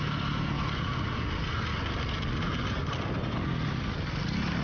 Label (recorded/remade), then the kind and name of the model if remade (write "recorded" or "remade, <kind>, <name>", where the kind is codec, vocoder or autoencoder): recorded